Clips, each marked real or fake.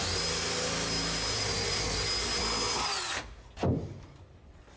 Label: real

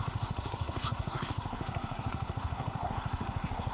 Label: fake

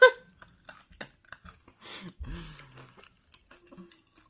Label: real